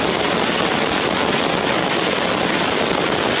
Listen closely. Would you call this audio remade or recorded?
recorded